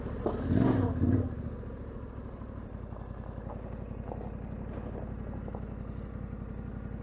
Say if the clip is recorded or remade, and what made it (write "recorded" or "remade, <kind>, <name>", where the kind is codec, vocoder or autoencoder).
recorded